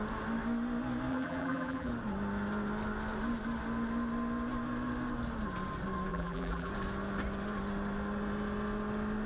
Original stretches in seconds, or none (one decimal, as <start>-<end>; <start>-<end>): 0.0-1.1; 1.9-6.1; 6.7-9.3

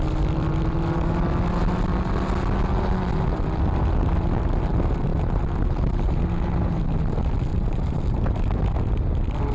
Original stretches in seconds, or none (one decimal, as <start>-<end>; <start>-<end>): 0.0-5.1; 6.8-7.5; 8.9-9.5

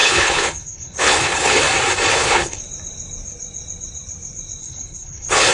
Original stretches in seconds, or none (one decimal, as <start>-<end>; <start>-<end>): 1.6-2.1; 2.6-4.6